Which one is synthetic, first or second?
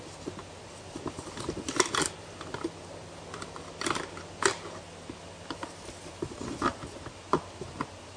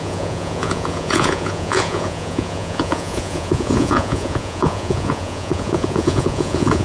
second